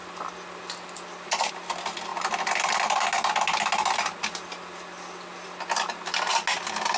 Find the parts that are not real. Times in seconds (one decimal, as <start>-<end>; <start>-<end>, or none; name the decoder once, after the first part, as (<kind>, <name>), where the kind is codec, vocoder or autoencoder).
none